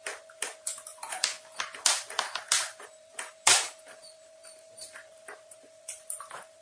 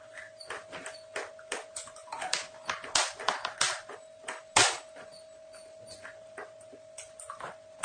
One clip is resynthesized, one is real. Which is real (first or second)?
second